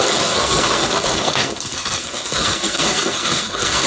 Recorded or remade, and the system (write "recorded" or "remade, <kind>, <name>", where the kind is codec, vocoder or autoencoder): remade, codec, SNAC